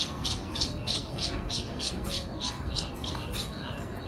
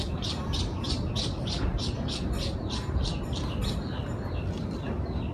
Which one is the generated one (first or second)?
first